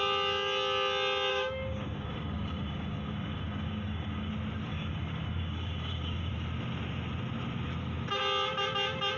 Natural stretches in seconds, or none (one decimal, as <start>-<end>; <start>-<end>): 0.0-1.3; 4.3-4.7; 6.3-9.2